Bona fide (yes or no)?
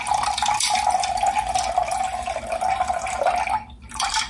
no